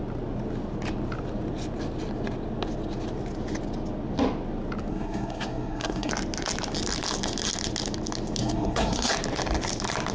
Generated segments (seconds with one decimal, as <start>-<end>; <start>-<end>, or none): 4.9-6.1; 8.4-9.1

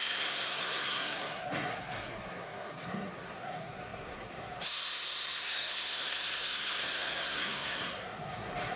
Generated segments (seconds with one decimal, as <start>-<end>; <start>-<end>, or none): 0.0-8.8

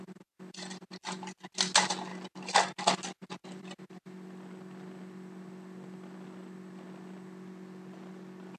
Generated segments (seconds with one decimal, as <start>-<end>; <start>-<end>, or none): none

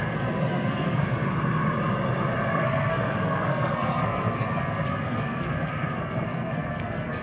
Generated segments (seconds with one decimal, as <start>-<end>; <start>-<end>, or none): 0.0-1.2; 2.5-7.2

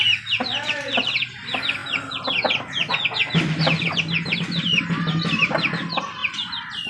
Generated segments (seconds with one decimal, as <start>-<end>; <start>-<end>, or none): none

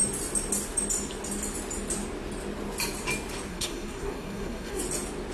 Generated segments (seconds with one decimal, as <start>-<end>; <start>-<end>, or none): 3.5-4.8

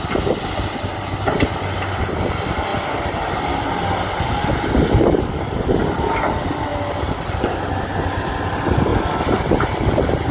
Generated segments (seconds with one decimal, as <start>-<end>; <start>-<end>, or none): none